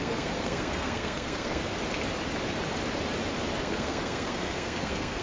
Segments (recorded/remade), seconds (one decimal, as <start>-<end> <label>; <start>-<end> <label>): 0.0-1.6 remade; 1.6-3.6 recorded; 3.6-5.2 remade